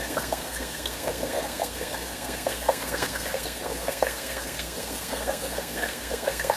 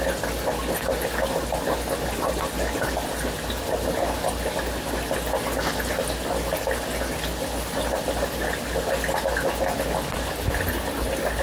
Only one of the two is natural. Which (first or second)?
second